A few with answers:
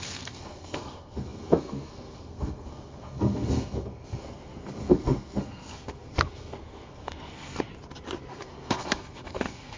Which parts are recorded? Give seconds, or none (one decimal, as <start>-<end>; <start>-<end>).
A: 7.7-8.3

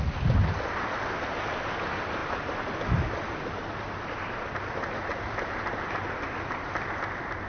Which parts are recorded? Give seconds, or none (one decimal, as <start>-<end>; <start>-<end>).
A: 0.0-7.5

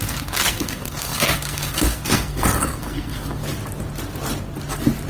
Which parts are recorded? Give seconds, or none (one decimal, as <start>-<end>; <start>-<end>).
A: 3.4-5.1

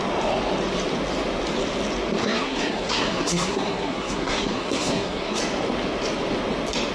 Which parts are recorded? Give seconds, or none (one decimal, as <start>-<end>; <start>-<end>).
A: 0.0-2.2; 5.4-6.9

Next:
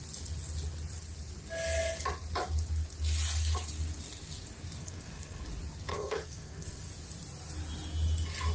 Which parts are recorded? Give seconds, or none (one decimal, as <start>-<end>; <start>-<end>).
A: 0.0-4.8; 5.4-5.9; 6.9-8.5